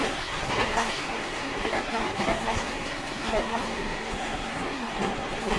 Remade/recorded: remade